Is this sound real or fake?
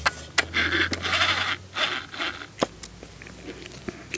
real